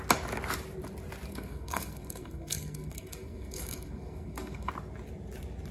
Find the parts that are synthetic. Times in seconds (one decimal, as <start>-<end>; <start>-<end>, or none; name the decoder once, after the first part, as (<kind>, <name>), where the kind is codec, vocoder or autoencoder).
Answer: 1.3-4.7 (codec, SNAC)